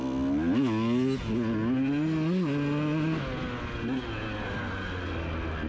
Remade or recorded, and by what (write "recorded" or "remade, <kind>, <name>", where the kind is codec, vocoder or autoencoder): recorded